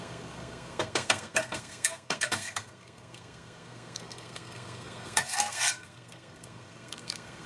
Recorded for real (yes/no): no